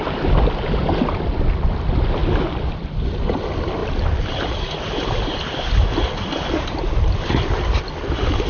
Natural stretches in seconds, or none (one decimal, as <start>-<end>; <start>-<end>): 0.0-8.5